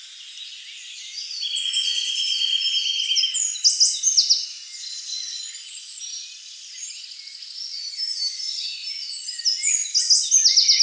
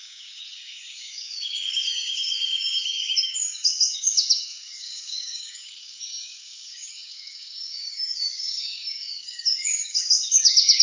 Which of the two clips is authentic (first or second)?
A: first